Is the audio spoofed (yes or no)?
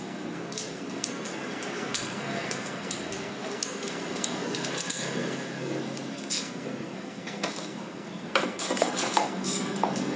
yes